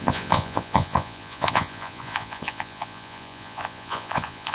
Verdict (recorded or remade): remade